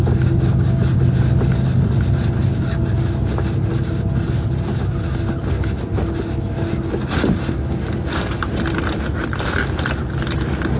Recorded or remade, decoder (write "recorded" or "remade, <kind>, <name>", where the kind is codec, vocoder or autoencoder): recorded